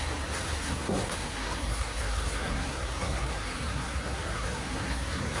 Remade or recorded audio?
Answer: remade